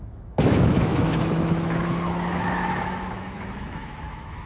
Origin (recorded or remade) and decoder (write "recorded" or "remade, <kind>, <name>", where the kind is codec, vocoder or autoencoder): remade, autoencoder, DAC-VAE